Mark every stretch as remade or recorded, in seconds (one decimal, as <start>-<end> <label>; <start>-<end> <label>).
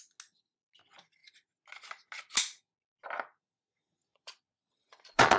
0.0-4.1 recorded; 4.1-5.4 remade